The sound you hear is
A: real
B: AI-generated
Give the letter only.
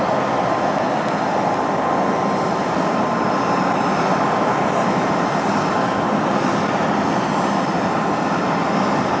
A